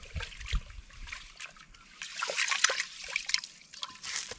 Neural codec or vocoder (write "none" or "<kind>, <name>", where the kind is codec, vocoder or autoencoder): none